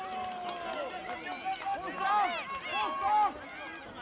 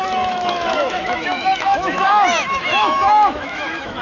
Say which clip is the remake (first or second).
second